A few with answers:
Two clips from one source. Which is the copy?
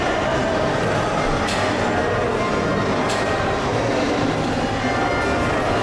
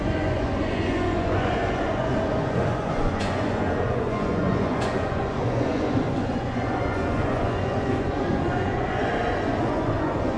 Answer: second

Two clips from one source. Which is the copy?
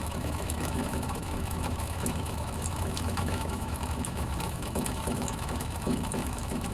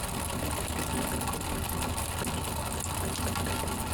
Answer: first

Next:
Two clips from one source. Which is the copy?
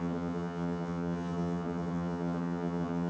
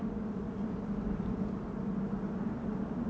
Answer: first